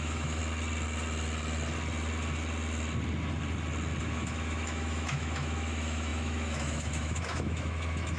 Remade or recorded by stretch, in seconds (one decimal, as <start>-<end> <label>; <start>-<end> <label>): 0.0-0.4 remade; 0.4-4.0 recorded; 4.0-8.2 remade

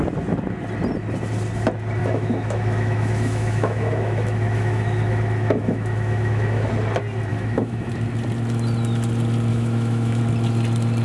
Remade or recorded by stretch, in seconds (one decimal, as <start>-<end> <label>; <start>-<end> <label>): 0.0-2.0 recorded; 2.0-6.7 remade; 6.7-7.3 recorded; 7.3-7.9 remade; 7.9-9.5 recorded; 9.5-10.2 remade; 10.2-11.0 recorded